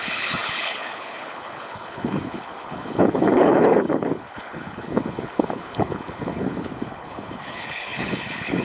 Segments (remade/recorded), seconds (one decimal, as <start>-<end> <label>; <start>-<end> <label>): 0.0-8.6 remade